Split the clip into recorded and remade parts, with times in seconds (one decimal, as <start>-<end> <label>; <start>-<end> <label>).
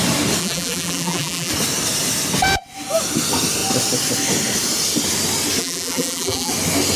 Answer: 0.0-0.4 recorded; 0.4-1.5 remade; 1.5-5.6 recorded; 5.6-6.5 remade; 6.5-7.0 recorded